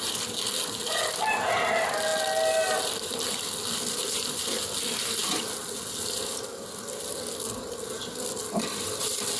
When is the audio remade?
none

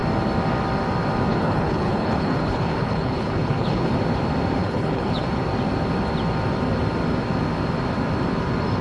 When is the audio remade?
1.3-3.9 (codec, HILCodec); 4.6-5.2

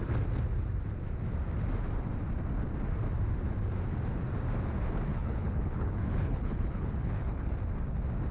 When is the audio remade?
5.1-7.5 (codec, HILCodec)

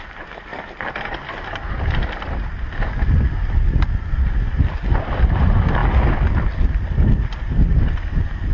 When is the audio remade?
none

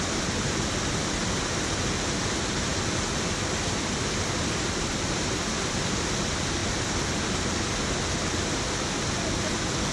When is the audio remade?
none

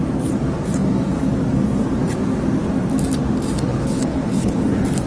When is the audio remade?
3.7-4.6 (codec, HILCodec)